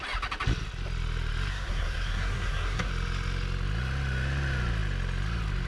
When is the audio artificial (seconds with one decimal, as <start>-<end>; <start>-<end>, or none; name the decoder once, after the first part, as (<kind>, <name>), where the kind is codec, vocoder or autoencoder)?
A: 1.5-2.9 (codec, SNAC)